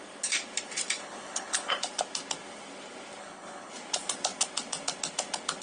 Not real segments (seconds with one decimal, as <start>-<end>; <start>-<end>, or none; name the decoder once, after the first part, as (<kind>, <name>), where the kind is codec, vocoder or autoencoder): 1.0-1.7 (codec, HILCodec); 3.2-3.7